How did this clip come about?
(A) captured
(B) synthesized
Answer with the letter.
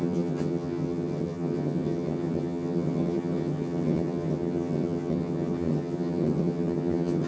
B